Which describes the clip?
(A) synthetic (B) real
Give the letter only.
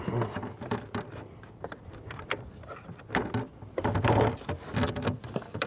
B